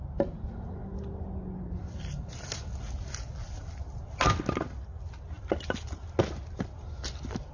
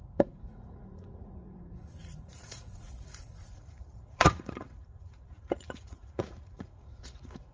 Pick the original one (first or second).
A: first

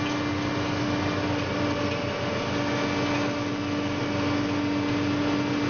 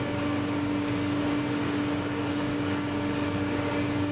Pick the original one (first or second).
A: first